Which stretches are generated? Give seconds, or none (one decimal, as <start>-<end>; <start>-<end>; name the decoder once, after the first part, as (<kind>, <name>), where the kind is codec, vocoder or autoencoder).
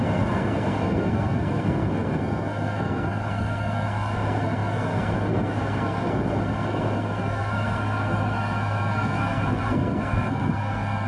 0.0-11.1 (codec, SNAC)